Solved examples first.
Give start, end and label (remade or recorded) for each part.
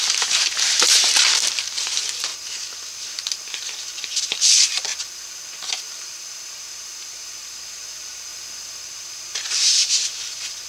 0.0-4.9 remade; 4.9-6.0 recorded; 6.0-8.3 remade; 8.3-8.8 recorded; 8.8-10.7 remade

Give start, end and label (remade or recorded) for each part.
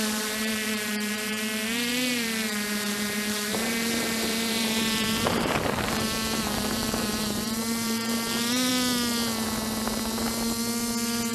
0.0-8.7 remade; 8.7-11.3 recorded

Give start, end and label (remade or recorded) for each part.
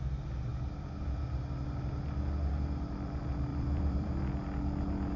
0.0-3.5 recorded; 3.5-4.1 remade; 4.1-5.2 recorded